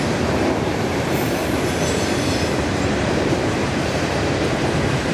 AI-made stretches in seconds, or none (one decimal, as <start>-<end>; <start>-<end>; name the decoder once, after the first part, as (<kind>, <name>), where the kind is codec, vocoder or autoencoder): 0.0-1.4 (vocoder, BigVGAN v2); 2.7-5.1